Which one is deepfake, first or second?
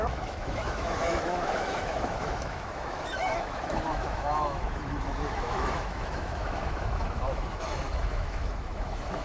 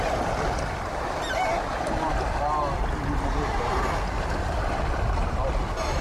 first